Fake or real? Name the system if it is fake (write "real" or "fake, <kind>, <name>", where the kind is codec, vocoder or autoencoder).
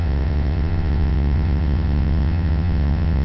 fake, vocoder, WaveNeXt